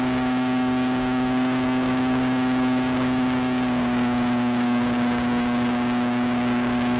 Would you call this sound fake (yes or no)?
yes